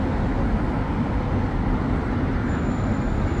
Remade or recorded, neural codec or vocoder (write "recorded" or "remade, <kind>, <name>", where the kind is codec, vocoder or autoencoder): recorded